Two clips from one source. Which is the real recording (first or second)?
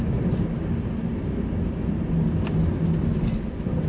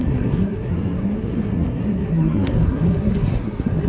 first